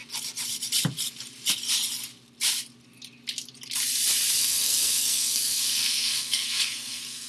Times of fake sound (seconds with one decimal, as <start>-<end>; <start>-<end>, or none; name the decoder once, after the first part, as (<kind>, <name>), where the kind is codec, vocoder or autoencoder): 4.4-7.3 (codec, SNAC)